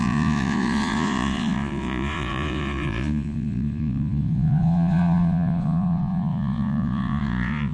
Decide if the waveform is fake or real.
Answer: fake